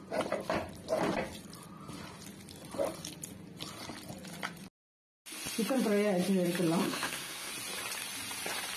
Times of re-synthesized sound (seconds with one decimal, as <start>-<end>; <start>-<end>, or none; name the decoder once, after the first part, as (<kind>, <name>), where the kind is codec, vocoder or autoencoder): 6.8-7.5 (codec, SNAC)